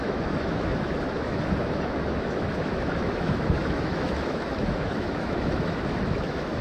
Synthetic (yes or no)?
yes